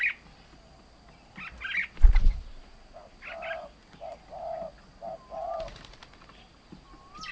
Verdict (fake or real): real